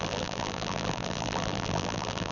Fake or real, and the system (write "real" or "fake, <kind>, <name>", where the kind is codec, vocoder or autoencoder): fake, vocoder, BigVGAN v2